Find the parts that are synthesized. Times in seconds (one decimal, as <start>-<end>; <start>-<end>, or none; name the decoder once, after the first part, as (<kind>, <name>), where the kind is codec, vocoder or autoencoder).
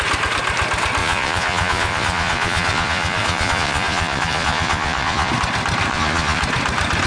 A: 1.0-5.3 (vocoder, Vocos); 5.9-6.4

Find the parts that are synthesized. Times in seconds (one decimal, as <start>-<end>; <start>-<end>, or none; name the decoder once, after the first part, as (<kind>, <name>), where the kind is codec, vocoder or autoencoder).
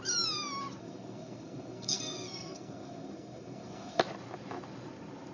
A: 0.8-4.0 (codec, SNAC)